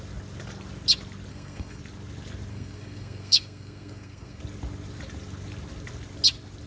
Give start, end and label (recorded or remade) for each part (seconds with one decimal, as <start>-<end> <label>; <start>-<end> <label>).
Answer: 0.0-1.3 recorded; 1.3-1.8 remade; 1.8-2.5 recorded; 2.5-4.4 remade; 4.4-6.7 recorded